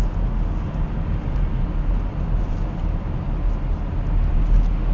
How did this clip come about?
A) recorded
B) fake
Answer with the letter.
A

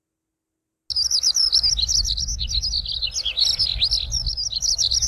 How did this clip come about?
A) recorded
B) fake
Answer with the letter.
A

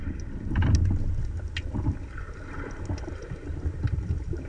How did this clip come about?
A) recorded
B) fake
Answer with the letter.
A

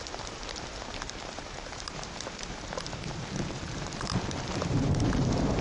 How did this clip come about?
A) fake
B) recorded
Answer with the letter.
A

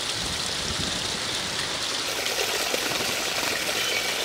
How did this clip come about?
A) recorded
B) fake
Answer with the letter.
A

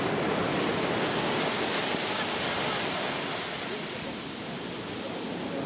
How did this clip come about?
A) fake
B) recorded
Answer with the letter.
B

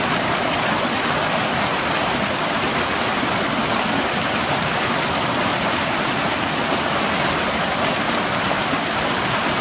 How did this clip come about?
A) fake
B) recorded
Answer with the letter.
A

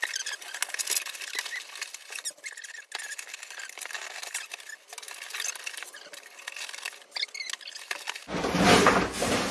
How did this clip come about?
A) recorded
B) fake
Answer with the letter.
A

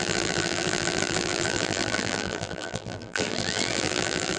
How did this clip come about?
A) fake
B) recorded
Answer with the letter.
A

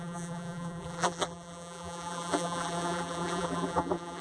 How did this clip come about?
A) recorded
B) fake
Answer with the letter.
B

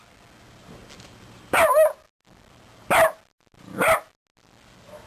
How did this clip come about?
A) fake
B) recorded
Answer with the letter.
B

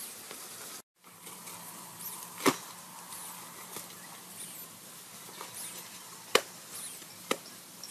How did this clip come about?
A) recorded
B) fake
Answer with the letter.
A